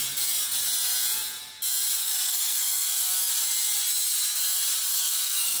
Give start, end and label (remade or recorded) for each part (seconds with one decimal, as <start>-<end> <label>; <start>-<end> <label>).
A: 0.0-2.0 recorded; 2.0-3.3 remade; 3.3-4.9 recorded; 4.9-5.6 remade